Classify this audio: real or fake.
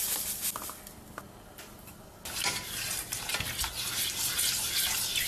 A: real